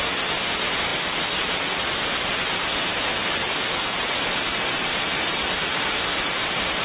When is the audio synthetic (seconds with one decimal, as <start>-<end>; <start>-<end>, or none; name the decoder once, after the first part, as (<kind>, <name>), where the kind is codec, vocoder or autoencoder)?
none